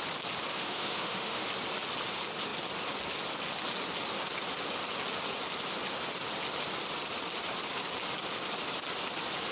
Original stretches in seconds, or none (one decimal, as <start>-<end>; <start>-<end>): 0.0-0.5; 1.5-9.5